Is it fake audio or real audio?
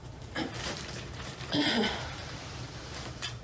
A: fake